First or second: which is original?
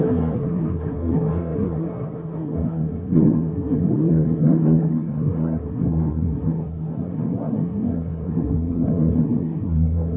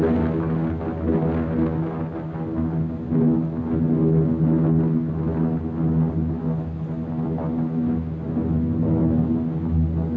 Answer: second